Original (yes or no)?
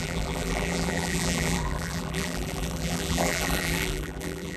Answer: no